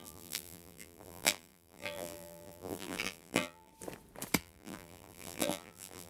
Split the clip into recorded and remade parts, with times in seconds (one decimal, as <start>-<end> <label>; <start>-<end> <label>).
0.0-3.7 remade; 3.7-4.4 recorded; 4.4-6.1 remade